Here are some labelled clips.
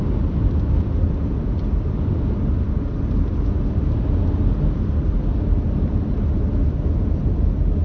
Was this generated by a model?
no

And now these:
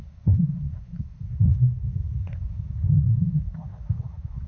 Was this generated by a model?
yes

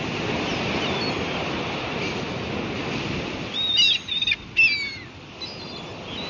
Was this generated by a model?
no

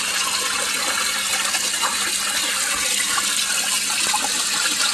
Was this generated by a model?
no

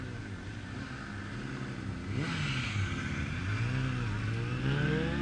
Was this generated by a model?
no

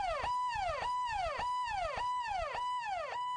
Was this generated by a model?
no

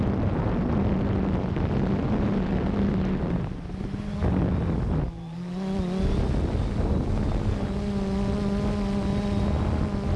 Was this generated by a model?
no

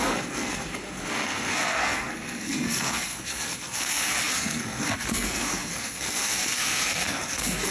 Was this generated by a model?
yes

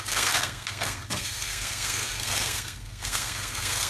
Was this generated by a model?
yes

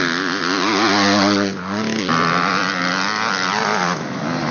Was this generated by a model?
no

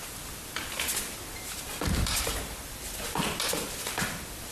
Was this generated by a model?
no